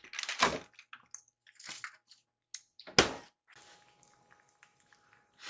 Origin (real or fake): real